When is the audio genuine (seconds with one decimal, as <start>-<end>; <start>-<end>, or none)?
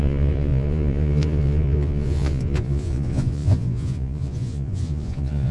none